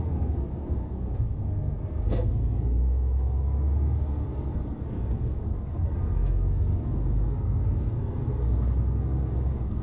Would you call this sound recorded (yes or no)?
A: no